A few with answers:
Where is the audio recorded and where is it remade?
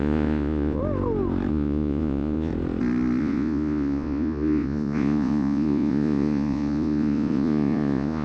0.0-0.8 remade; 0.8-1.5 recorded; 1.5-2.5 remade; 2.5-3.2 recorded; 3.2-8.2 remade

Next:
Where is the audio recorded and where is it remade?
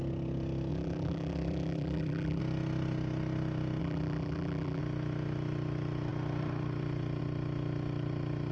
0.0-0.7 recorded; 0.7-2.4 remade; 2.4-3.8 recorded; 3.8-4.8 remade; 4.8-8.5 recorded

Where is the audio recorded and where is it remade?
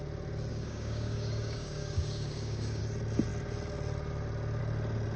0.0-0.5 recorded; 0.5-2.8 remade; 2.8-5.2 recorded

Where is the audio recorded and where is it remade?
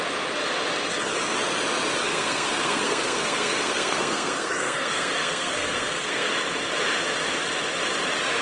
0.0-2.0 recorded; 2.0-6.3 remade; 6.3-8.4 recorded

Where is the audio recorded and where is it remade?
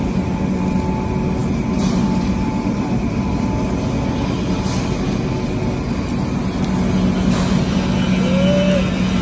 0.0-1.4 recorded; 1.4-3.7 remade; 3.7-9.2 recorded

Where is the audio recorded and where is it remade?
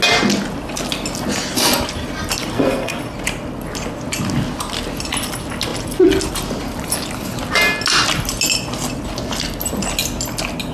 0.0-2.5 recorded; 2.5-3.0 remade; 3.0-10.7 recorded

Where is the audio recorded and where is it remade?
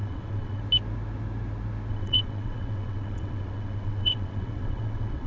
0.0-0.6 remade; 0.6-1.9 recorded; 1.9-5.3 remade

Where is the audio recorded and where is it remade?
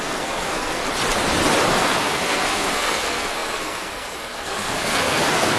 0.0-0.8 remade; 0.8-1.7 recorded; 1.7-5.6 remade